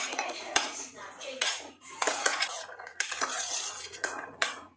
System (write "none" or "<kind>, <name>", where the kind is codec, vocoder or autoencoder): vocoder, Vocos